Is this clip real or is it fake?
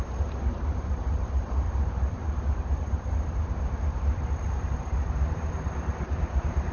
fake